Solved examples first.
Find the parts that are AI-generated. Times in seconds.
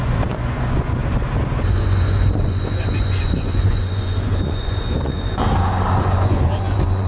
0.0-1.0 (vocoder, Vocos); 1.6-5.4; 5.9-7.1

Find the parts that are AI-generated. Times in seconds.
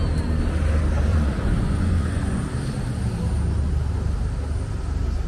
1.1-2.4 (vocoder, Vocos)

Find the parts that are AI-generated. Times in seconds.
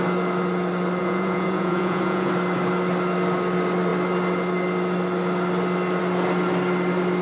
1.0-2.3 (vocoder, Vocos)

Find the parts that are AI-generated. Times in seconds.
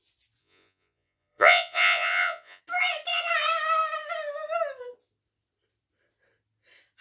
0.4-2.6 (vocoder, Vocos)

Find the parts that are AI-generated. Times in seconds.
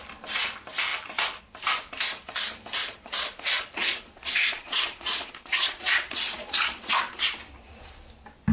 2.8-7.0 (vocoder, Vocos)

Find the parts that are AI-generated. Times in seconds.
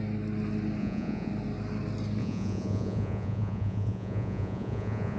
0.8-1.3 (vocoder, Vocos); 2.2-5.2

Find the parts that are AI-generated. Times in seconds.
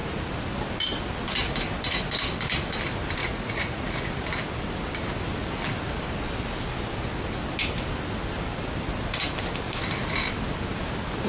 3.2-4.1 (vocoder, Vocos)